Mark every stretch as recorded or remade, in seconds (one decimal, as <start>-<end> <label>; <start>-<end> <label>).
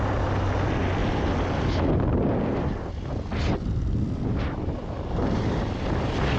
0.0-6.4 recorded